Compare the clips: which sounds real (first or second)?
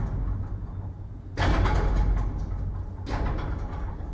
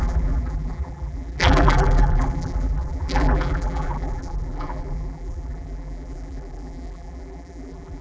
first